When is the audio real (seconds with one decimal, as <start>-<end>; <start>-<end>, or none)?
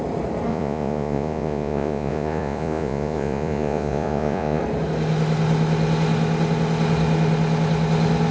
0.0-0.5; 4.6-8.3